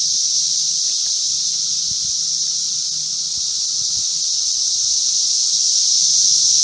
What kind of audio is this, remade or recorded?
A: recorded